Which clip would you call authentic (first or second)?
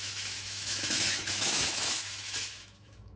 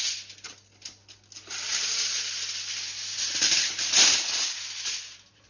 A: second